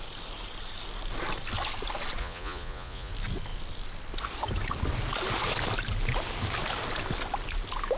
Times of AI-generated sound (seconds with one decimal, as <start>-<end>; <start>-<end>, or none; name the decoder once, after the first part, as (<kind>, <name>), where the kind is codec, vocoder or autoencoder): 2.2-3.1 (vocoder, Vocos)